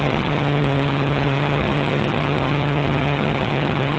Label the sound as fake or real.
fake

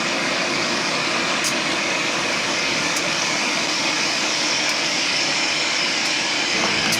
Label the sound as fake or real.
fake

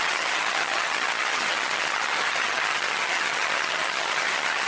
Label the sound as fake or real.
fake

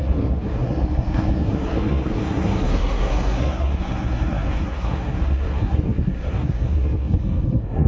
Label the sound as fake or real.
fake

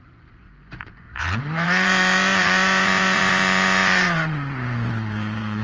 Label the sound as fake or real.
fake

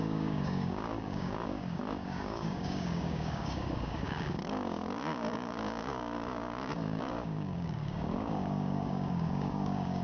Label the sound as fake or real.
fake